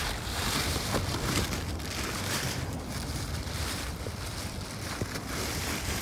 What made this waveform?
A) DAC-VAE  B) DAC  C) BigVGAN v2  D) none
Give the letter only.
C